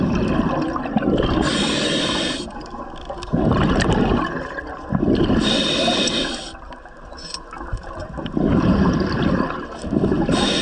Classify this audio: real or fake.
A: real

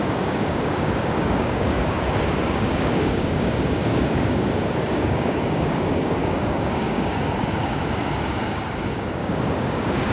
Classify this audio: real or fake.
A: fake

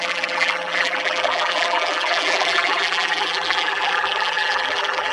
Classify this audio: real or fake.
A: fake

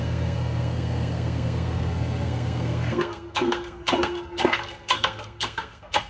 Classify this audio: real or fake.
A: fake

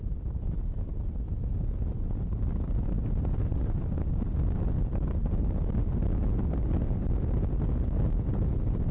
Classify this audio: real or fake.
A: real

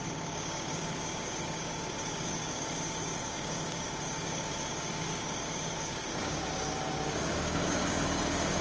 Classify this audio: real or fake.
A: fake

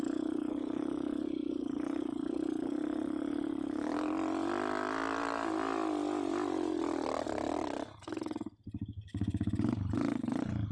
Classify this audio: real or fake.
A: real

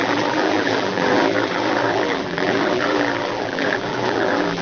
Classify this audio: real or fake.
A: fake